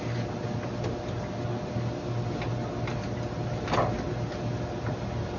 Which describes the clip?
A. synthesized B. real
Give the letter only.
B